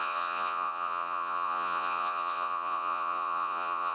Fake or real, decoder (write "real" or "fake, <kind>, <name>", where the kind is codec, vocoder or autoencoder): fake, vocoder, Vocos